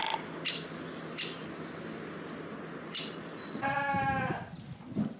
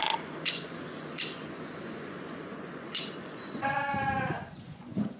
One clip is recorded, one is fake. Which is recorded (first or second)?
first